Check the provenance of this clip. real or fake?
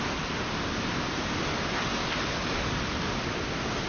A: real